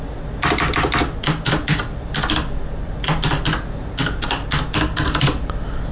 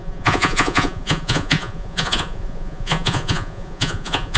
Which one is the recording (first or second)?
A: first